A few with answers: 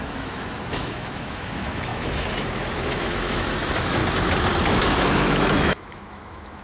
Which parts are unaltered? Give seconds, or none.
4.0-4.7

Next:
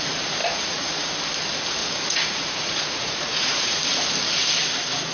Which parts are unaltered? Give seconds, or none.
0.0-0.4; 1.1-1.8; 3.8-5.1

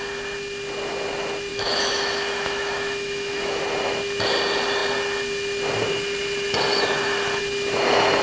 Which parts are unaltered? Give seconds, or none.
0.0-1.5; 3.6-8.2

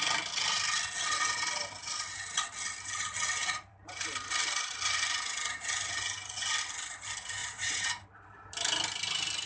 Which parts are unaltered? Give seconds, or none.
0.0-3.4; 4.7-7.4; 7.9-9.5

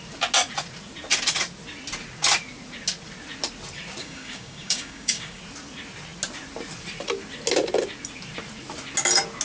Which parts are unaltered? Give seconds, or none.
0.0-4.0; 5.4-9.4

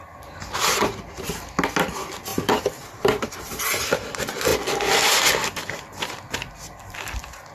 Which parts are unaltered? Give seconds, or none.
0.0-2.3; 3.3-7.5